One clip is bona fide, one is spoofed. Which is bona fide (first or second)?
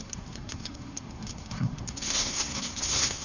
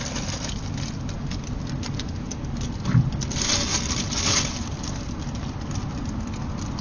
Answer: second